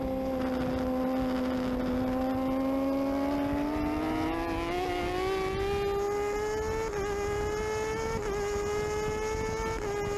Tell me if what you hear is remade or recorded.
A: recorded